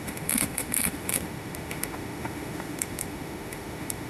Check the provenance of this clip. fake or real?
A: fake